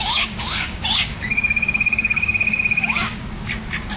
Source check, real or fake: fake